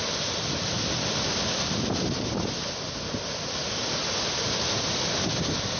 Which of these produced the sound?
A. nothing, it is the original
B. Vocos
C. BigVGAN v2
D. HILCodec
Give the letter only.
A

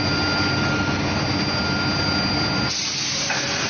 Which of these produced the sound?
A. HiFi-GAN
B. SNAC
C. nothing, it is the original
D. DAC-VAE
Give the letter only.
C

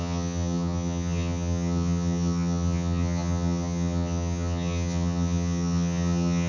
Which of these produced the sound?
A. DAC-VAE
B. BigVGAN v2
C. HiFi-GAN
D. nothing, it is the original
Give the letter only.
C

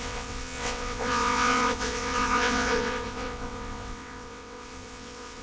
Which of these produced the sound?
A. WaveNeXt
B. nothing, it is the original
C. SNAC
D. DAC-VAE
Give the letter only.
A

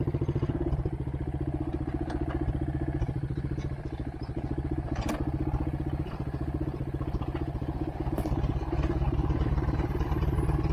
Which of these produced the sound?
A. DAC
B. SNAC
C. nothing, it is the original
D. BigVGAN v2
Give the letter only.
C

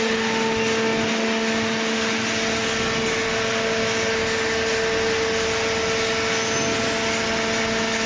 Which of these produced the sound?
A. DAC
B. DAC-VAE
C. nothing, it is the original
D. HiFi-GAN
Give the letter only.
C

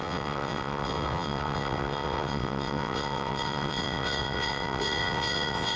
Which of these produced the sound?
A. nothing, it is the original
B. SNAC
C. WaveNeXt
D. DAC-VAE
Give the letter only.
C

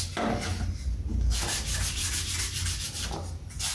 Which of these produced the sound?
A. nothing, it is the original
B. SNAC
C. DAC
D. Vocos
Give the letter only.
A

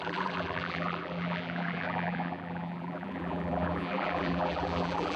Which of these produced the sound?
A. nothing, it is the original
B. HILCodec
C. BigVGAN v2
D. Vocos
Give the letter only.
C